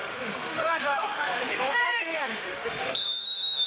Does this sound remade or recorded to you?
remade